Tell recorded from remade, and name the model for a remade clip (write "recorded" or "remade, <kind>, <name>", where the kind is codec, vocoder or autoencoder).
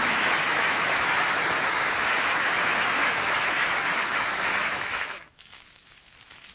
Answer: remade, autoencoder, DAC-VAE